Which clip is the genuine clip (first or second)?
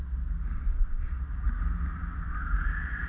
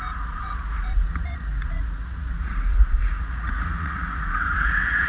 first